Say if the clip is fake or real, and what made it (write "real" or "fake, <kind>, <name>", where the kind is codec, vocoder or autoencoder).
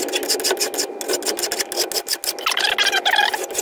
real